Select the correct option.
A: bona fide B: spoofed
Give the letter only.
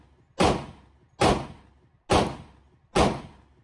A